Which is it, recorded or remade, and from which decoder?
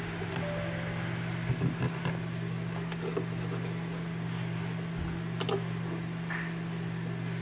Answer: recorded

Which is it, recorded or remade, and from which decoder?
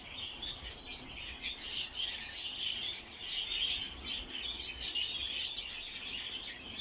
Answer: recorded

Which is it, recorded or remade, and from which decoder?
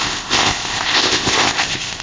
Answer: remade, codec, ZipCodec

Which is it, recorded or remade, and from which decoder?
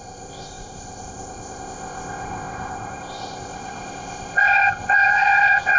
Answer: remade, codec, ZipCodec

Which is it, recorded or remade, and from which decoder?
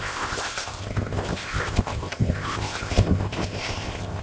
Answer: remade, codec, ZipCodec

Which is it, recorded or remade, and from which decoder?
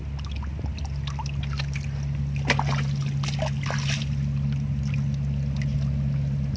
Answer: recorded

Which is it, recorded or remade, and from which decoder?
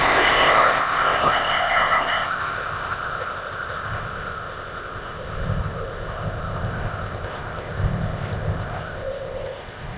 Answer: remade, codec, ZipCodec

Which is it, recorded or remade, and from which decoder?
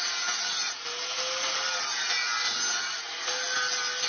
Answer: recorded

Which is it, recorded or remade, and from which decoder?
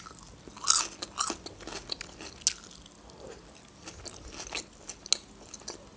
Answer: recorded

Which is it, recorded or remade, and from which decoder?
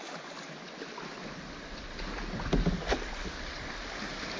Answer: recorded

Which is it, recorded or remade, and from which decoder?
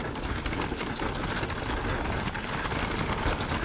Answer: recorded